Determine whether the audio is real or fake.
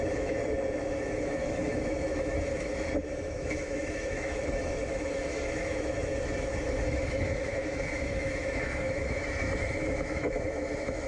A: fake